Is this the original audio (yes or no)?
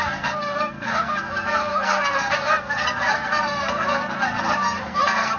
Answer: no